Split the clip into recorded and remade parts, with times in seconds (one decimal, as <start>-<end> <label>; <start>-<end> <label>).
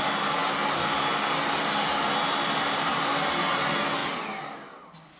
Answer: 0.0-5.2 recorded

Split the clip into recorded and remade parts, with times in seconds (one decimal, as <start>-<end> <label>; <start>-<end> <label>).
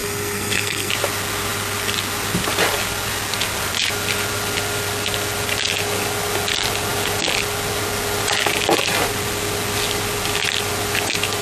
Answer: 0.0-0.9 remade; 0.9-11.4 recorded